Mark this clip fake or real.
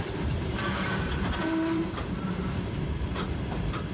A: fake